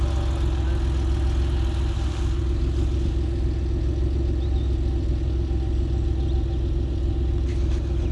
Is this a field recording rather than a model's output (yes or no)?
yes